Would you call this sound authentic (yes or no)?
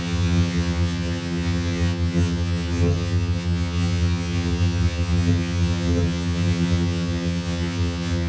no